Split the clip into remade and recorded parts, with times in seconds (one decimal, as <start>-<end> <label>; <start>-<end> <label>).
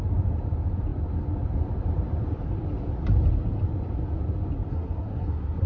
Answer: 0.0-4.7 recorded; 4.7-5.7 remade